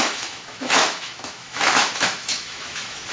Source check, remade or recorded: remade